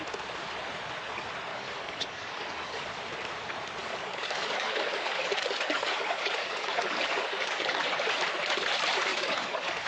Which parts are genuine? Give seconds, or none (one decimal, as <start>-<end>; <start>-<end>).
0.0-1.5; 2.8-3.8; 7.8-9.1